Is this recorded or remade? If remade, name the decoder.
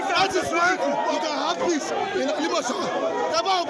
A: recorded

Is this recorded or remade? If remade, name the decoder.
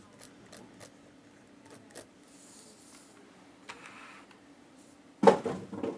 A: recorded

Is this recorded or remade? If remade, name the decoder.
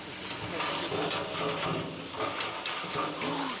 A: recorded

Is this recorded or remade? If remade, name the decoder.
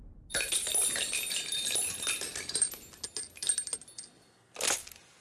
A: recorded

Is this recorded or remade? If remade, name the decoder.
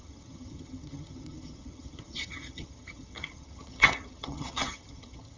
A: remade, vocoder, HiFi-GAN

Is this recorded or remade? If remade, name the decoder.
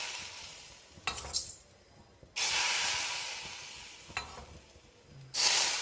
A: recorded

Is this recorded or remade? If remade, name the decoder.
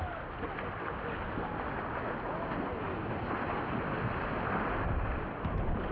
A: recorded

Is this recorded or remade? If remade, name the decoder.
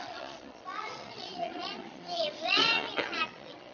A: remade, vocoder, Vocos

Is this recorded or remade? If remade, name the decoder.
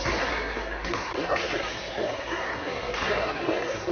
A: remade, codec, SNAC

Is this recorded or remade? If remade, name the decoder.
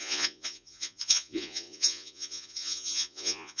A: remade, vocoder, Vocos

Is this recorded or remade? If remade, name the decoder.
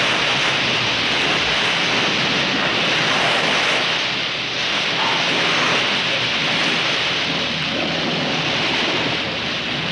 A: recorded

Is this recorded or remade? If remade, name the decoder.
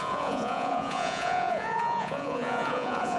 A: remade, vocoder, Vocos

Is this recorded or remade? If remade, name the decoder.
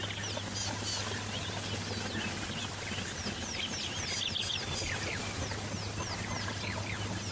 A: recorded